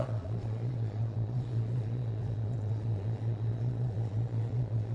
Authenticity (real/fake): fake